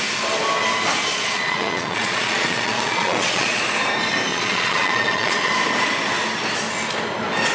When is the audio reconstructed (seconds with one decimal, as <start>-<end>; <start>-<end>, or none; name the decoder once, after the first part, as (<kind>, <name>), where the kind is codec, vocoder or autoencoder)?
1.1-3.6 (vocoder, Vocos); 4.3-5.5